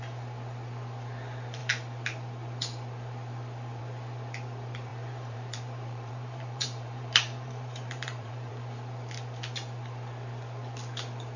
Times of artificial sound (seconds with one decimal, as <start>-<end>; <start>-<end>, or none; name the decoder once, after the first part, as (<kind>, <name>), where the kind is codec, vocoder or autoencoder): 4.9-8.5 (vocoder, BigVGAN v2)